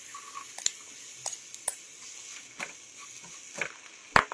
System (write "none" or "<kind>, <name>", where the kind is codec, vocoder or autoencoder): none